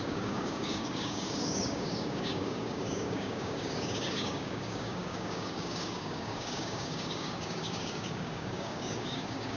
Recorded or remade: remade